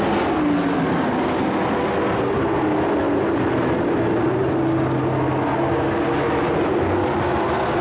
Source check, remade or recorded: recorded